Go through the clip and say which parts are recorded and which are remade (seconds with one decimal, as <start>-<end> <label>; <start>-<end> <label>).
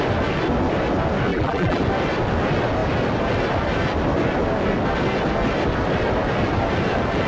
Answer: 0.0-1.3 recorded; 1.3-1.8 remade; 1.8-7.3 recorded